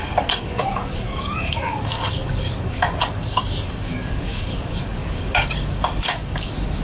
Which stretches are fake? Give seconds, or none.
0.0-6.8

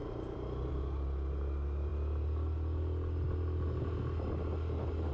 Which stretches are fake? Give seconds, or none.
none

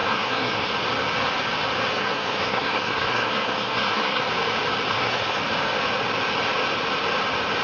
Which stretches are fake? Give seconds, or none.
0.0-0.7; 1.9-4.2; 4.9-5.4